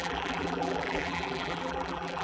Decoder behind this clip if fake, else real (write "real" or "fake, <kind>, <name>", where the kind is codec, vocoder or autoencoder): fake, vocoder, BigVGAN v2